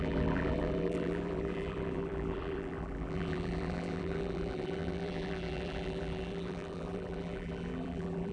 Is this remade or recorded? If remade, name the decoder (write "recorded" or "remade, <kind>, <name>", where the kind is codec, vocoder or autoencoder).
remade, vocoder, BigVGAN v2